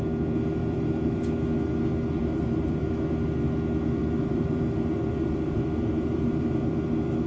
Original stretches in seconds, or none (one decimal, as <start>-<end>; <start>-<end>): 0.0-0.6; 1.2-2.2; 3.0-4.0; 6.7-7.3